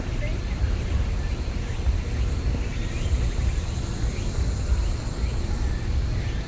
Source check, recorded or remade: recorded